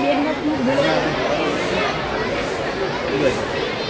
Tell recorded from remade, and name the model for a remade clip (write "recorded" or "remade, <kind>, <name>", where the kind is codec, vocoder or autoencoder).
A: recorded